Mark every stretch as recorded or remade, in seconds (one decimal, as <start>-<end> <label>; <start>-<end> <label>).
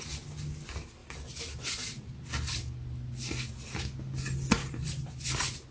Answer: 0.0-4.6 recorded; 4.6-5.2 remade; 5.2-5.7 recorded